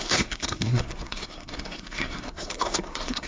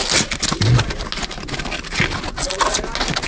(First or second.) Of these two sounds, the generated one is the first